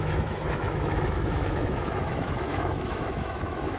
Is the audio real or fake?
fake